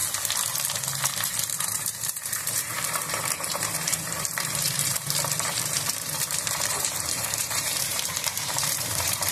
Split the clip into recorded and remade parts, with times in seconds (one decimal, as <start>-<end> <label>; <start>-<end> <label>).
0.0-1.6 recorded; 1.6-9.3 remade